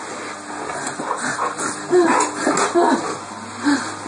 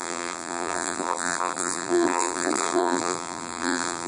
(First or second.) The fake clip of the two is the second